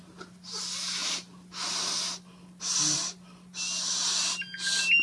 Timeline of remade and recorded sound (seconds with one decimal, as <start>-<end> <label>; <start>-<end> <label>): 0.0-5.0 recorded